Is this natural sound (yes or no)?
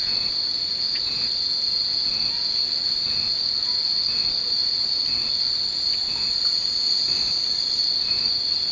yes